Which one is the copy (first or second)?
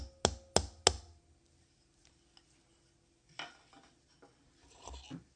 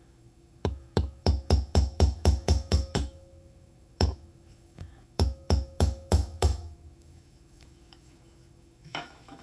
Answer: second